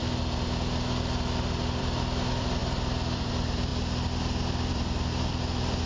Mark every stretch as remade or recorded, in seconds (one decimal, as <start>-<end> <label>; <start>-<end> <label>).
0.0-1.8 recorded; 1.8-3.7 remade; 3.7-4.7 recorded; 4.7-5.9 remade